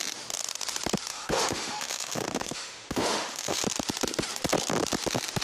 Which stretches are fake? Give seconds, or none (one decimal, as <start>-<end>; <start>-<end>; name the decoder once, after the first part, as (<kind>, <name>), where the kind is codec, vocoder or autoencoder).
1.1-3.6 (autoencoder, DAC-VAE)